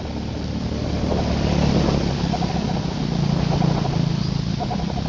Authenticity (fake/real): real